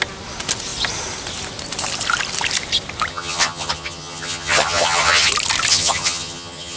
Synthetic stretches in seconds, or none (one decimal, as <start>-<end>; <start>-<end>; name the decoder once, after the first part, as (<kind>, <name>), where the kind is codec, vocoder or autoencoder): 3.1-5.3 (vocoder, HiFi-GAN); 5.7-6.8